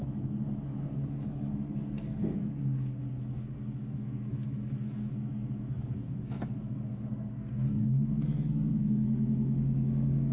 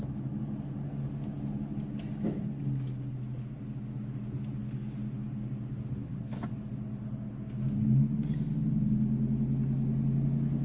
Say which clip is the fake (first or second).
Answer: first